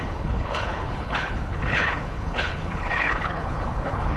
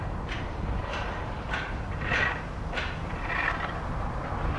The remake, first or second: first